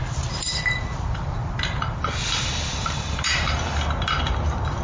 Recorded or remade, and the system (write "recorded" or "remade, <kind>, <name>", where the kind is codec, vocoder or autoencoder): recorded